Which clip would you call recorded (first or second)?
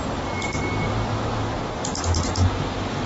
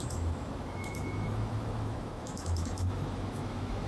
first